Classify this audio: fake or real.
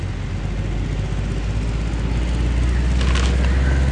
real